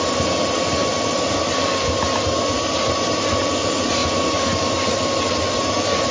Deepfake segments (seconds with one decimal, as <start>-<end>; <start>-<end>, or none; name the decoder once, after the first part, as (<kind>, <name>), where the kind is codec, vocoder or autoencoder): none